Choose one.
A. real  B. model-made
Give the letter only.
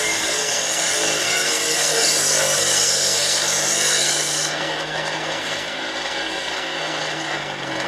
B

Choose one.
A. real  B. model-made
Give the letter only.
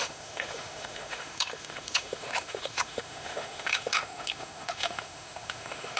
B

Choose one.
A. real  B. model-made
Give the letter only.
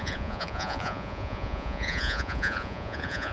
B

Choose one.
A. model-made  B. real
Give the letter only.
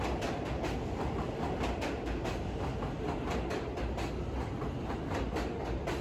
B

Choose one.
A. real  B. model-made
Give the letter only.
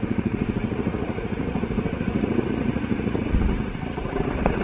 B